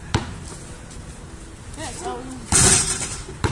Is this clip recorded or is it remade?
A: recorded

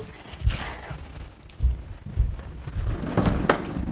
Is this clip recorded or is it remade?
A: recorded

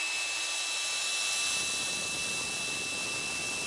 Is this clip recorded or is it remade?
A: recorded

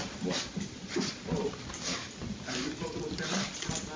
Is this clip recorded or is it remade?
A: recorded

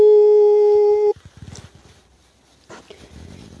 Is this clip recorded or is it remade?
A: recorded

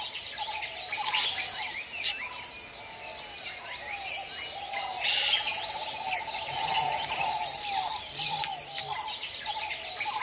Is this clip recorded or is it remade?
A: recorded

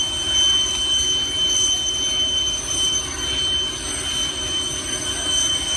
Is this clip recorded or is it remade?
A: recorded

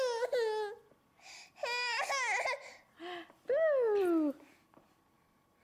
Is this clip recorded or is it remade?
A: recorded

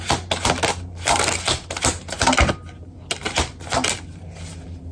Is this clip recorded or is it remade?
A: recorded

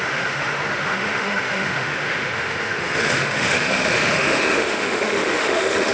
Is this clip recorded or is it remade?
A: remade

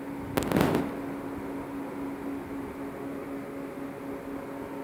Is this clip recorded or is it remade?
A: recorded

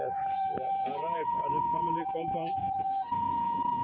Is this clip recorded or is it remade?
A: remade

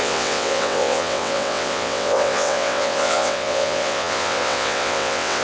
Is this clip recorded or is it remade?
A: remade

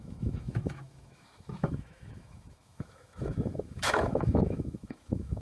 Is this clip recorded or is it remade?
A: remade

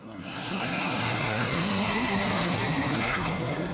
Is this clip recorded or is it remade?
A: remade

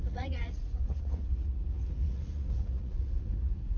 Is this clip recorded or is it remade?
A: remade